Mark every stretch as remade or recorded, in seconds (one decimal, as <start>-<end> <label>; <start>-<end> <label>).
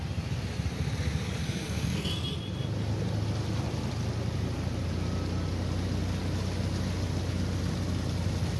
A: 0.0-1.4 recorded; 1.4-2.1 remade; 2.1-8.6 recorded